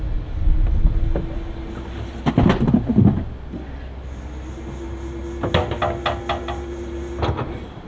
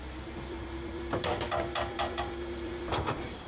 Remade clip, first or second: second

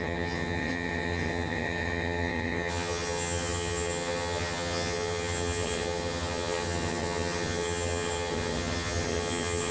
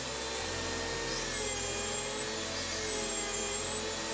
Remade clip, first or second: first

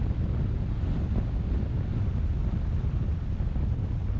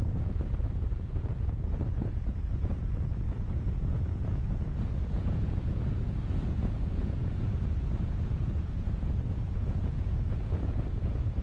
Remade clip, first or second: second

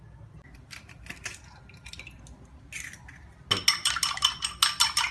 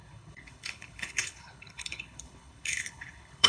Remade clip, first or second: second